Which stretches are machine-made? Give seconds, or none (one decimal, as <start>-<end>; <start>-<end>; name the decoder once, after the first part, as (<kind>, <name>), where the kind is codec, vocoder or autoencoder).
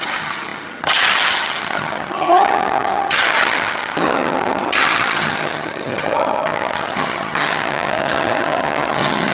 0.0-9.3 (vocoder, HiFi-GAN)